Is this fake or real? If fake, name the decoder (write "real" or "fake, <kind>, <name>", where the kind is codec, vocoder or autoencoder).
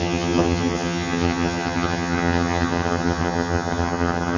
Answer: fake, vocoder, HiFi-GAN